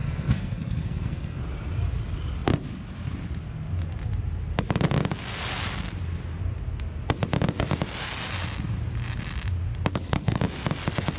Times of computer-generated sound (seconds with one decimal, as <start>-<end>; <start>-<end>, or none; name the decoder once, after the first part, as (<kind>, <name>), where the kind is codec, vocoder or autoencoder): 0.0-1.4 (codec, SNAC); 9.9-10.4